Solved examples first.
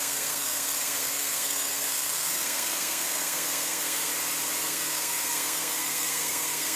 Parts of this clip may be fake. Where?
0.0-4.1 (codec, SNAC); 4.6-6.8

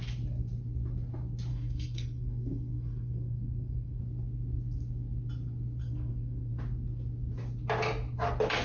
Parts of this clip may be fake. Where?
1.5-4.0 (codec, SNAC); 5.8-6.5